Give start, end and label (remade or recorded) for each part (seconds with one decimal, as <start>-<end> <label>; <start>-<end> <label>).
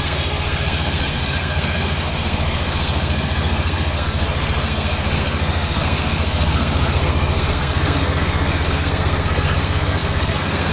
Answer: 0.0-10.7 remade